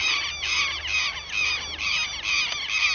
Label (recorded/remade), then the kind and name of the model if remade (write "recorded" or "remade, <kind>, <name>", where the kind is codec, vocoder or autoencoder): recorded